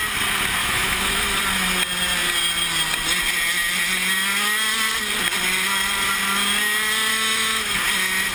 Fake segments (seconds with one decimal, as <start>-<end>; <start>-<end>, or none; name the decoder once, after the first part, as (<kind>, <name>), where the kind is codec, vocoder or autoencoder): 0.6-1.4 (autoencoder, DAC-VAE); 7.1-7.8